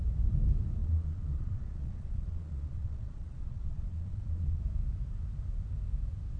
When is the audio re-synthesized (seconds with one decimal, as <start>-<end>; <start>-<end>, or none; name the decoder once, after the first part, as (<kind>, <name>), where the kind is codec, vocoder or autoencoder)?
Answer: 0.8-4.6 (vocoder, Vocos)

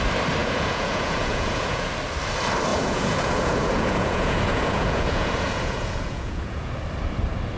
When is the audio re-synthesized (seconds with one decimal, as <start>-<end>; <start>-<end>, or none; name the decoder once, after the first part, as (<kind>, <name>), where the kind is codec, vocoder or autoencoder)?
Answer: 0.4-1.9 (vocoder, Vocos); 2.7-6.7

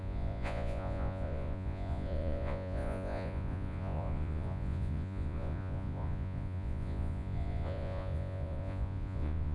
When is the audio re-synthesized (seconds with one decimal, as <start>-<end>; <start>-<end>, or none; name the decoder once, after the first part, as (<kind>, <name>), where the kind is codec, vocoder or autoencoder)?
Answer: 0.0-9.5 (vocoder, Vocos)

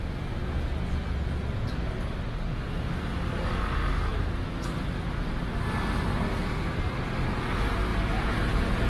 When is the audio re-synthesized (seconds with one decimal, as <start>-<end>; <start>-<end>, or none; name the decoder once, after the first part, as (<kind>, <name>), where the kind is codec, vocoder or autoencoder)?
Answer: 0.4-1.7 (vocoder, Vocos); 7.9-8.9

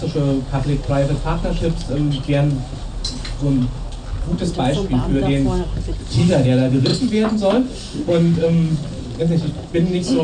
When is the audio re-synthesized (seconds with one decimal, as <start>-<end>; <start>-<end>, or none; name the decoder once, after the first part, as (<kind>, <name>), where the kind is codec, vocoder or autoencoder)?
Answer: none

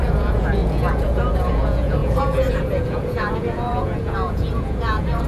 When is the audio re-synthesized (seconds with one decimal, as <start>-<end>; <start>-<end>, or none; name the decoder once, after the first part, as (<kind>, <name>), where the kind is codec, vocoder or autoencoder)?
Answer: 0.0-5.3 (vocoder, Vocos)

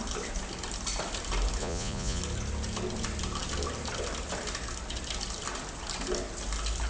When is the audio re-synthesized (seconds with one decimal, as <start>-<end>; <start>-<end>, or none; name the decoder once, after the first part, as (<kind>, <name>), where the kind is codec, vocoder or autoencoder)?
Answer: 1.6-2.2 (vocoder, Vocos)

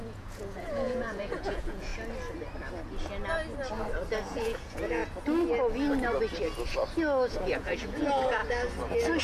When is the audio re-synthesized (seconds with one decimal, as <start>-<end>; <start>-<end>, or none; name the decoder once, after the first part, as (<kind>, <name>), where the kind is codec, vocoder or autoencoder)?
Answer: 0.0-1.9 (vocoder, Vocos); 4.1-5.0; 7.3-8.4